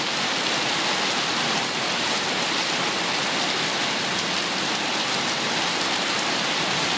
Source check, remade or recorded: recorded